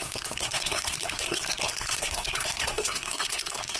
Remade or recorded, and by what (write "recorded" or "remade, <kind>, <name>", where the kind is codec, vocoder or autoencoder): remade, codec, SNAC